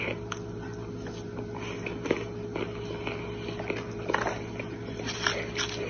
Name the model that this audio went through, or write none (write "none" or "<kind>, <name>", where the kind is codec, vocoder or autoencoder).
none